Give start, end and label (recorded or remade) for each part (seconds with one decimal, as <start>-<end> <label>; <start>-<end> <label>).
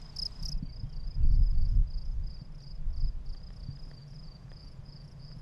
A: 0.0-4.0 recorded; 4.0-5.4 remade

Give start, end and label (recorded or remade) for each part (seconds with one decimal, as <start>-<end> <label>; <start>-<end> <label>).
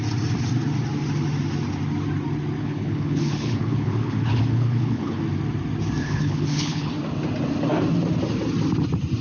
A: 0.0-2.6 recorded; 2.6-5.2 remade; 5.2-6.0 recorded; 6.0-6.9 remade; 6.9-9.2 recorded